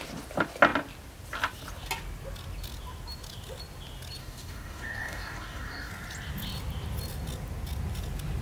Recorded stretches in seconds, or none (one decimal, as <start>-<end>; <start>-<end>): 0.0-4.2; 5.9-8.4